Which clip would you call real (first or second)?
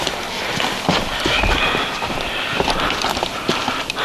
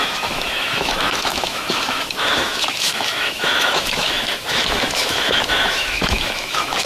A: first